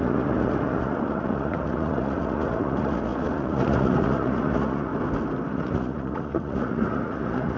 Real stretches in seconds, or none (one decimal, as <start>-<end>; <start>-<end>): 4.9-5.5